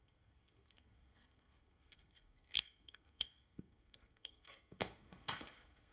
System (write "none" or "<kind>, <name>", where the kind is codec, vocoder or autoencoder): codec, SNAC